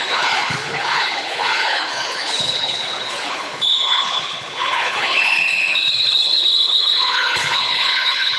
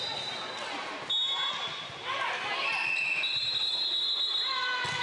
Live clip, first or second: second